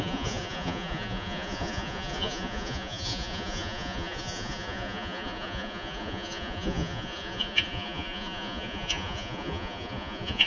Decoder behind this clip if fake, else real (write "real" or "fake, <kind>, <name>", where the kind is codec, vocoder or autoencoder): fake, vocoder, Vocos